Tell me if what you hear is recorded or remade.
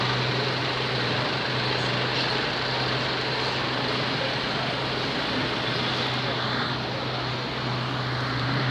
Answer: recorded